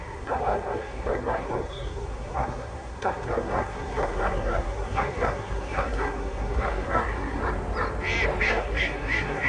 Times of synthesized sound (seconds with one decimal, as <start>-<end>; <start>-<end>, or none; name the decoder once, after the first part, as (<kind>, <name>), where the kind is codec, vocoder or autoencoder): 0.0-7.4 (codec, SNAC); 8.4-9.5